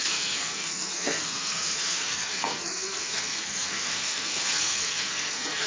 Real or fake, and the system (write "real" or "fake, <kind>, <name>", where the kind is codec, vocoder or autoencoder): fake, codec, SNAC